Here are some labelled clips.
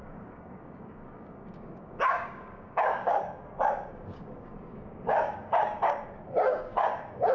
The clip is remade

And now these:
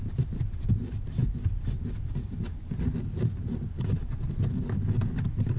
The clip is recorded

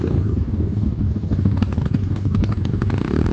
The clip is remade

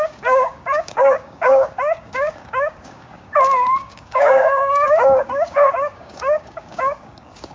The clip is remade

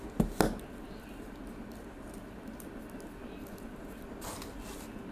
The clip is recorded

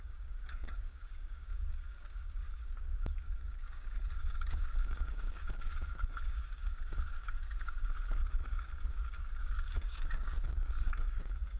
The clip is remade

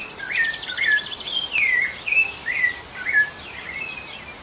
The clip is recorded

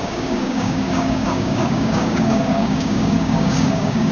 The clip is remade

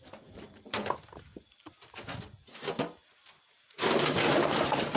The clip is recorded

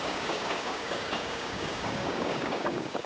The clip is remade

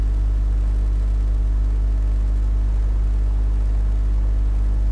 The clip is recorded